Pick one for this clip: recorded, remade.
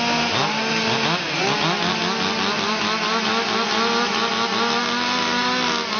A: recorded